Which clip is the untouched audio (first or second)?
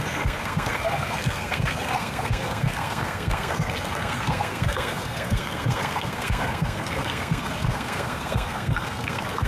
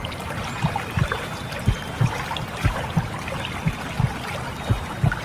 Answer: second